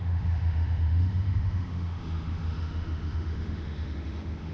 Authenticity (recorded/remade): remade